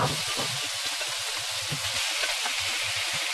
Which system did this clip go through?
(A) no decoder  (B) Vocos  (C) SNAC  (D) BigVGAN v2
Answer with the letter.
A